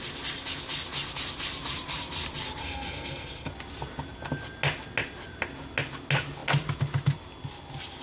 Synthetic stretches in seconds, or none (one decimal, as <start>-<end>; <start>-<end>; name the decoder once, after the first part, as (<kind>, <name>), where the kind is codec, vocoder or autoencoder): 2.6-3.5 (codec, SNAC)

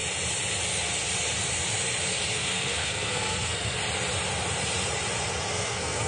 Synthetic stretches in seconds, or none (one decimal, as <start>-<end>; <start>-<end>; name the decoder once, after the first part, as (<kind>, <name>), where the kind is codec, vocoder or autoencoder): 2.3-3.8 (codec, SNAC); 5.5-6.1

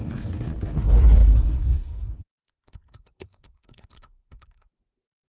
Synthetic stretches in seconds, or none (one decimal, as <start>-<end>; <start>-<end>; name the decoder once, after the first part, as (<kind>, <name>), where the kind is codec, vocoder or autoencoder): 0.0-5.3 (codec, SNAC)

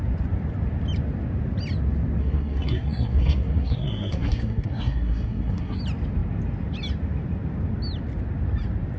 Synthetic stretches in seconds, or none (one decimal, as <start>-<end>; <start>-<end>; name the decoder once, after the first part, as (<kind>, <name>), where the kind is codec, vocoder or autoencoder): 2.2-5.8 (codec, SNAC)

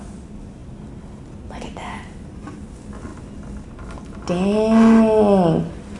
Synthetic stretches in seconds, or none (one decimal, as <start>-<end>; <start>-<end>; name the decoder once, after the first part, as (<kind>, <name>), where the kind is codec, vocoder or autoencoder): none

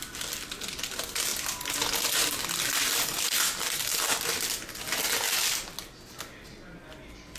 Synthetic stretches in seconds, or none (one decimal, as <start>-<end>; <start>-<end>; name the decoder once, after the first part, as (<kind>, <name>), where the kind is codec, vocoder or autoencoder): none